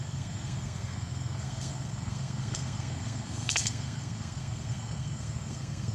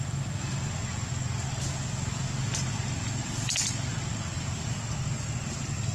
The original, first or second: second